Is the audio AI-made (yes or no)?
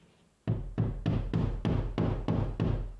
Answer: no